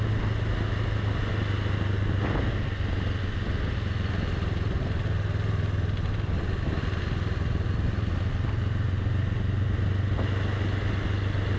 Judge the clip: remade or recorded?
recorded